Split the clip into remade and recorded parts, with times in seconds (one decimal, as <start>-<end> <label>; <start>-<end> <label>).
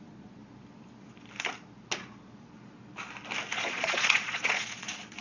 0.0-0.4 remade; 0.4-3.5 recorded; 3.5-5.2 remade